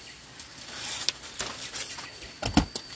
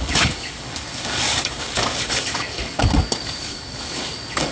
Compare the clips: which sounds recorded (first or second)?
first